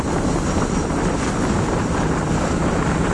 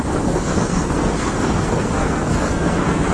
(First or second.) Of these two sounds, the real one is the first